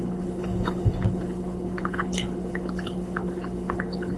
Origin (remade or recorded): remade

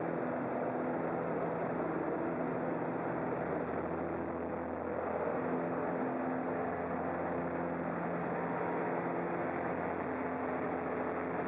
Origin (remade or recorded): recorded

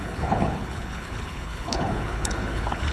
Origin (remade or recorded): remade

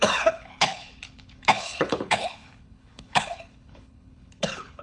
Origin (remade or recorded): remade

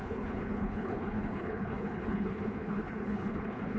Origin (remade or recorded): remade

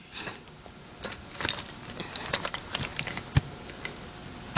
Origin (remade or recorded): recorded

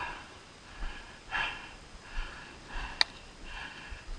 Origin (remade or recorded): recorded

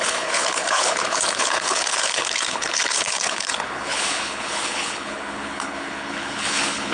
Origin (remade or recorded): remade